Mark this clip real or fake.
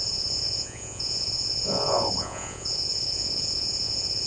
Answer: fake